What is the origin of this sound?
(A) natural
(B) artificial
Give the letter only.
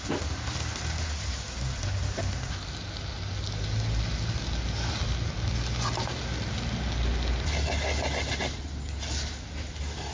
A